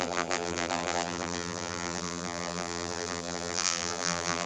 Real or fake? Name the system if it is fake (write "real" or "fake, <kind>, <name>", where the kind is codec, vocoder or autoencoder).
fake, vocoder, BigVGAN v2